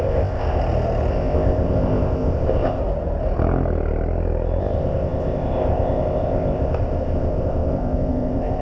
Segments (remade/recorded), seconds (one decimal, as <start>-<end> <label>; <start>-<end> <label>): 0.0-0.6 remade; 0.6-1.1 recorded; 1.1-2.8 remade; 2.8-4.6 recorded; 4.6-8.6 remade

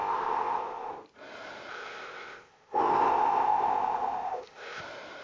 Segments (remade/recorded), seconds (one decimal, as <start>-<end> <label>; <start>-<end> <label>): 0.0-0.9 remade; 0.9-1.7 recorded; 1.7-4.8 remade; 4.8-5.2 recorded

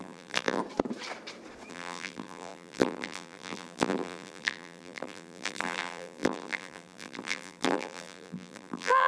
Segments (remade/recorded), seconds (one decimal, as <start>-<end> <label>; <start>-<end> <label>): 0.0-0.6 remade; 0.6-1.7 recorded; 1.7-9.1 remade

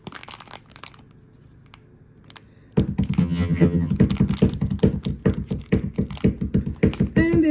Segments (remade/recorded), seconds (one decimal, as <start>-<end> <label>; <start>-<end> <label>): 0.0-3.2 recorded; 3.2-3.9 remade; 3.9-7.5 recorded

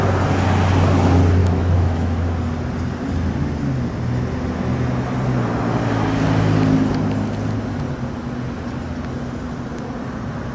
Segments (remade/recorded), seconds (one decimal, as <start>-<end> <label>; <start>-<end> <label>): 0.0-1.4 recorded; 1.4-2.4 remade; 2.4-10.5 recorded

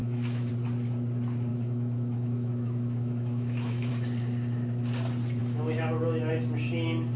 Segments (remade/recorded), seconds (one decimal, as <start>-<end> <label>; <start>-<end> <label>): 0.0-0.5 remade; 0.5-1.5 recorded; 1.5-3.9 remade; 3.9-5.4 recorded; 5.4-6.3 remade; 6.3-7.2 recorded

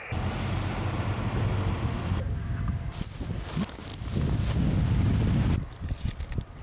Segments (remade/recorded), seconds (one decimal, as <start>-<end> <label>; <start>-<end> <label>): 0.0-6.6 recorded